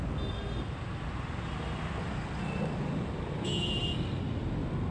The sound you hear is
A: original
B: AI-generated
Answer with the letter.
A